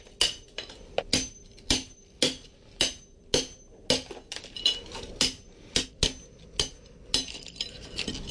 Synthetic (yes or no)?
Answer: no